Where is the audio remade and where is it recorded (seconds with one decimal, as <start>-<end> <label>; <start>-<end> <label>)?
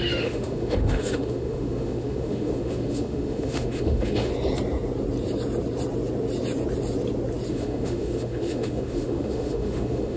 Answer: 0.0-4.3 remade; 4.3-7.5 recorded; 7.5-10.2 remade